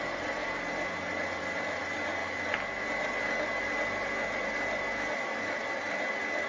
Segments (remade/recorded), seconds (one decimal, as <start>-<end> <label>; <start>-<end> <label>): 0.0-6.5 recorded